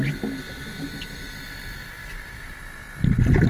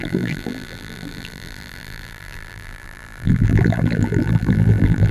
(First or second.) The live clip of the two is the first